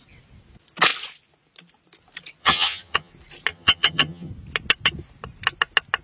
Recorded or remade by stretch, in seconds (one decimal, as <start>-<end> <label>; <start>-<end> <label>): 0.0-2.4 recorded; 2.4-3.1 remade; 3.1-3.5 recorded; 3.5-4.3 remade; 4.3-6.0 recorded